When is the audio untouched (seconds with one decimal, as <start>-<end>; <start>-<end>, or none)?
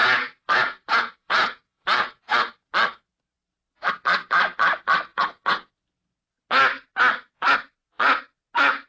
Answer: 2.3-5.1; 5.7-8.9